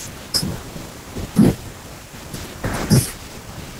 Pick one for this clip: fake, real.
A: fake